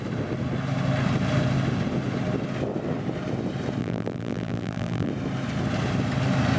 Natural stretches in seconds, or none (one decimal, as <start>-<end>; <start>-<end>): 0.0-3.8; 5.1-6.6